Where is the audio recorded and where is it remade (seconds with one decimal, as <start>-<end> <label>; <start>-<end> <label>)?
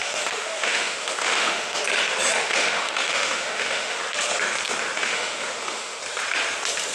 0.0-1.8 remade; 1.8-2.4 recorded; 2.4-4.0 remade; 4.0-5.0 recorded; 5.0-6.0 remade; 6.0-6.9 recorded